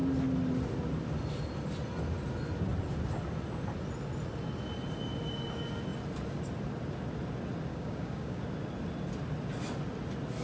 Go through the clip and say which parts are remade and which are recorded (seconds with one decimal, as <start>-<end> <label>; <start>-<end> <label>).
0.0-7.7 recorded; 7.7-8.4 remade; 8.4-10.4 recorded